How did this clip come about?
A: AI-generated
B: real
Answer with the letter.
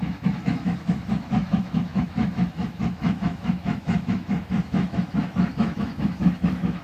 A